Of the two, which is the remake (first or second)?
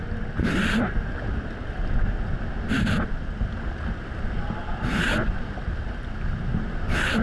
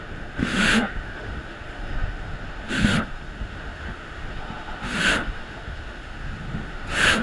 second